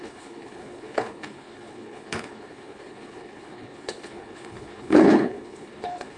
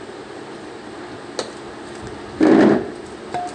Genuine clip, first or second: second